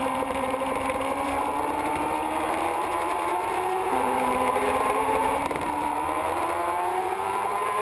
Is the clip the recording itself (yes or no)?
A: no